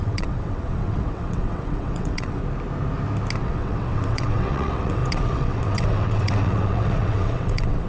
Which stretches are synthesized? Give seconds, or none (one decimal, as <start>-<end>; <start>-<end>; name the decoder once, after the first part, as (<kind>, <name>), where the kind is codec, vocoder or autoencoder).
0.0-2.4 (vocoder, WaveNeXt); 3.4-7.9